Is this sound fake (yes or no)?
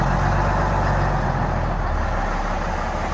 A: no